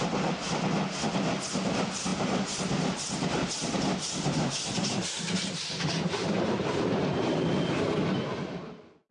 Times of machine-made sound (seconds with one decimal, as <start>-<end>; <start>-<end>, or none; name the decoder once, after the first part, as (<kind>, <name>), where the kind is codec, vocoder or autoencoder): 2.1-7.4 (vocoder, BigVGAN v2)